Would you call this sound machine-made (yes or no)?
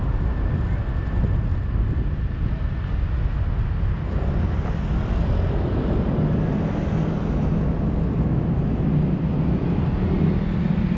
no